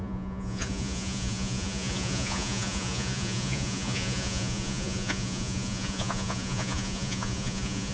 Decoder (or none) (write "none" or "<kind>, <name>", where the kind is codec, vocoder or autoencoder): vocoder, Vocos